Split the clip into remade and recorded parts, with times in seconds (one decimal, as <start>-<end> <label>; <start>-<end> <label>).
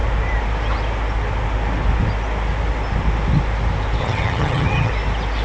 0.0-4.0 recorded; 4.0-4.9 remade; 4.9-5.4 recorded